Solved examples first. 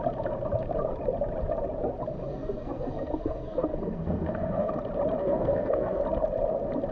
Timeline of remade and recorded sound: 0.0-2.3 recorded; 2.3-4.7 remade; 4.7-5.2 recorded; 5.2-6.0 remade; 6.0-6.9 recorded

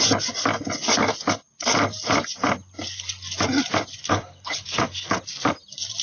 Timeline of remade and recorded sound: 0.0-4.0 recorded; 4.0-5.2 remade; 5.2-6.0 recorded

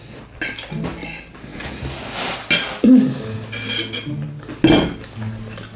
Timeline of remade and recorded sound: 0.0-5.8 recorded

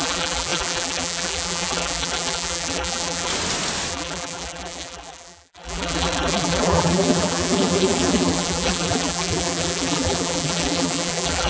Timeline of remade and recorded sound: 0.0-3.3 remade; 3.3-3.9 recorded; 3.9-11.5 remade

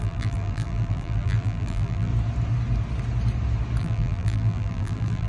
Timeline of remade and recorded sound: 0.0-2.1 remade; 2.1-3.8 recorded; 3.8-5.3 remade

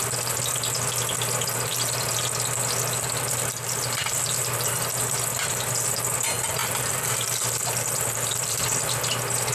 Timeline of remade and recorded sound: 0.0-6.6 recorded; 6.6-8.6 remade; 8.6-9.5 recorded